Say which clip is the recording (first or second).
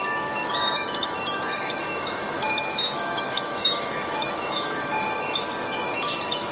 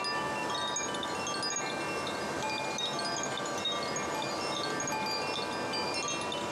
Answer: second